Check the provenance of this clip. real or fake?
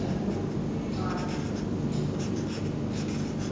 real